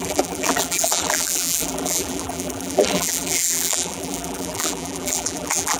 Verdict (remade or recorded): remade